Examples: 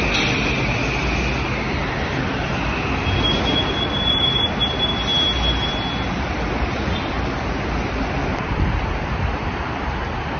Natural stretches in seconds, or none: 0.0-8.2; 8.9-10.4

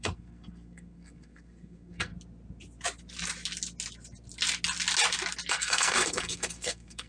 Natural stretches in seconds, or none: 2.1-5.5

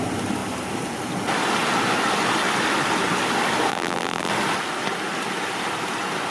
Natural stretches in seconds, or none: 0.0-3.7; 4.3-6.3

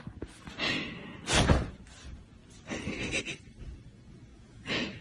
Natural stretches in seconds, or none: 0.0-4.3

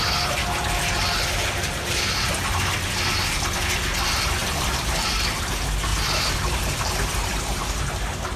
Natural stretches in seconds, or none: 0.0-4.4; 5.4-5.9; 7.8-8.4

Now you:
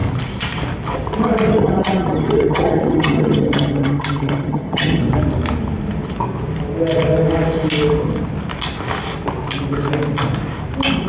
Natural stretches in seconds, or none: 0.0-1.6; 5.0-11.1

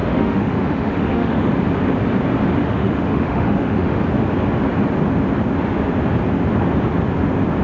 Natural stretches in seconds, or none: 1.5-2.6; 4.0-7.6

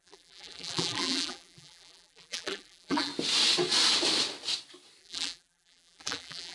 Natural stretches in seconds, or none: 3.1-5.0